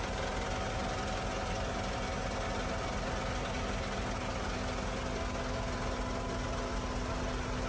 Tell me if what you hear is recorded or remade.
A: recorded